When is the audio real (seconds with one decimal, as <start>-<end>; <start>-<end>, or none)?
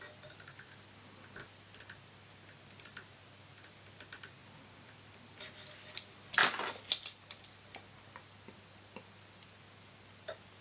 0.0-4.4; 5.1-6.4; 6.9-10.6